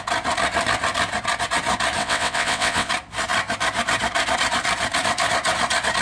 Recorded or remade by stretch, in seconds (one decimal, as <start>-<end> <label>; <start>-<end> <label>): 0.0-2.0 recorded; 2.0-2.9 remade; 2.9-6.0 recorded